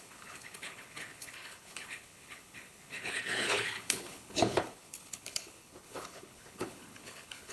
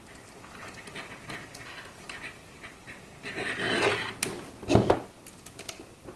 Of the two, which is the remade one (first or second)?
first